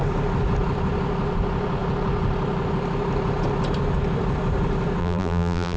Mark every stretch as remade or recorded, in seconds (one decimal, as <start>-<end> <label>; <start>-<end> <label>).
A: 0.0-5.0 recorded; 5.0-5.8 remade